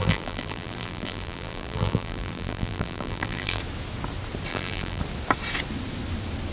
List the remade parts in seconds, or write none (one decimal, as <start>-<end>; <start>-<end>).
0.0-3.6; 4.5-5.0